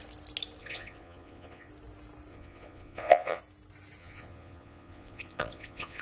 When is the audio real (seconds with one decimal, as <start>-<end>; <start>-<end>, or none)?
0.0-0.6; 1.7-2.3; 3.4-4.0